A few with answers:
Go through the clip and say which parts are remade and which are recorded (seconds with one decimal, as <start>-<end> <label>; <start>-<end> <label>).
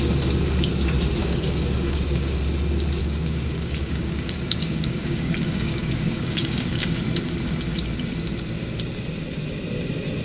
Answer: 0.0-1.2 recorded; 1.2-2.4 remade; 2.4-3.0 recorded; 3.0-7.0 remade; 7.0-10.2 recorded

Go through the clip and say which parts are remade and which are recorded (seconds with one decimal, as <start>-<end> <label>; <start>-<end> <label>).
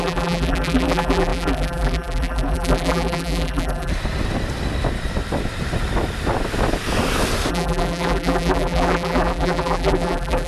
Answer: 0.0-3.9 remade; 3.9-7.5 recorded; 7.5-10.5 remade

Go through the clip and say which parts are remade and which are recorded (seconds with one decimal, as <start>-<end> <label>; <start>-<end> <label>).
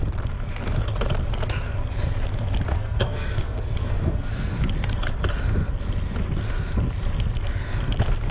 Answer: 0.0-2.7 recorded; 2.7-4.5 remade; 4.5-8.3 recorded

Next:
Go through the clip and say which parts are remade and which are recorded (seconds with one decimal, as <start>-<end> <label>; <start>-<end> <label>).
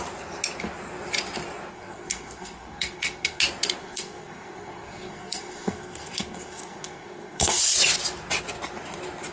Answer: 0.0-1.7 recorded; 1.7-3.4 remade; 3.4-3.8 recorded; 3.8-7.6 remade; 7.6-9.3 recorded